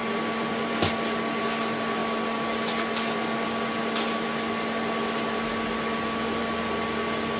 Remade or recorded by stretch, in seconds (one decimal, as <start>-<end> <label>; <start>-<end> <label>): 0.0-7.4 recorded